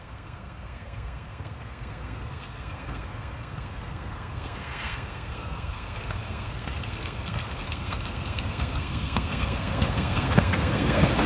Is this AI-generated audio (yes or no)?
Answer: yes